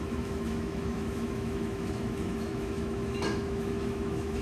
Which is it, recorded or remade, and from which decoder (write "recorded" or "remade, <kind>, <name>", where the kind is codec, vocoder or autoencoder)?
remade, autoencoder, DAC-VAE